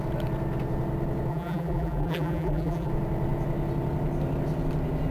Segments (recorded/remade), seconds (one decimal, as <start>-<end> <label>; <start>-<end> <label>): 0.0-1.3 recorded; 1.3-2.9 remade; 2.9-5.1 recorded